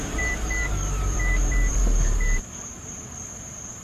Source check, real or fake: fake